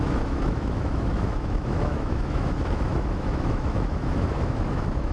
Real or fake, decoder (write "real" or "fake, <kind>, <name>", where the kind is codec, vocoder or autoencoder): fake, autoencoder, DAC-VAE